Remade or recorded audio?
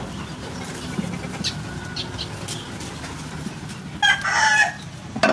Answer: recorded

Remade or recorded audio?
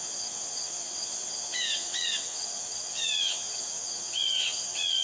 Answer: remade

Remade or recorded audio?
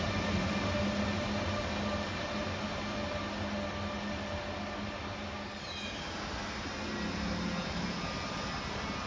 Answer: recorded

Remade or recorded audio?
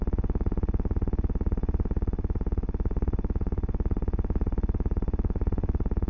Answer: remade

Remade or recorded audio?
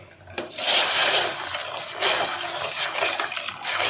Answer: recorded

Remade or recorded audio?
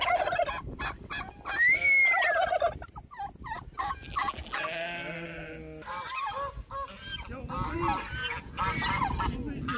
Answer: recorded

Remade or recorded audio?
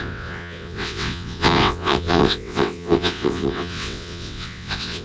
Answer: remade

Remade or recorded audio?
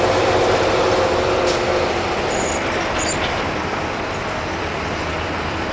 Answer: recorded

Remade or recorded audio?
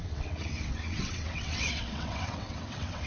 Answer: remade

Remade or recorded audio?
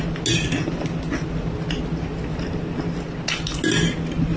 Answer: recorded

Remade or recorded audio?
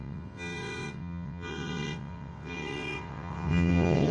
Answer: remade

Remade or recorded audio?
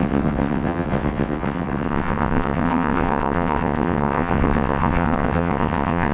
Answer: remade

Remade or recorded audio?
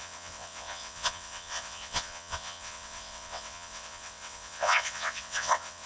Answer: remade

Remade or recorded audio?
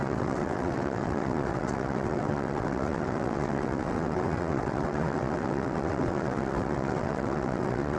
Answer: remade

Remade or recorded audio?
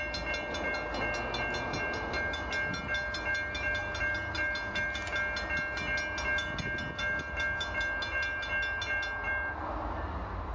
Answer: recorded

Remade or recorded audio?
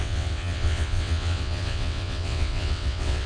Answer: remade